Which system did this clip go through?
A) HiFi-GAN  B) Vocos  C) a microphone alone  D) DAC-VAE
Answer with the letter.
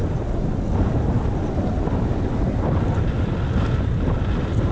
C